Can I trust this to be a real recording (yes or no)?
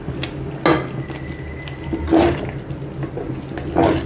yes